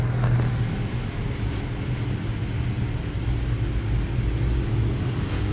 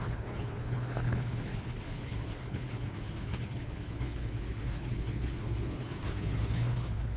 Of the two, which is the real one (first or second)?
first